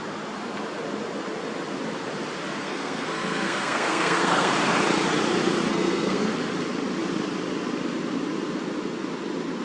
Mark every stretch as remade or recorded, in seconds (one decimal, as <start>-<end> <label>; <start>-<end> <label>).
0.0-2.6 recorded; 2.6-4.5 remade; 4.5-5.7 recorded; 5.7-6.3 remade; 6.3-9.6 recorded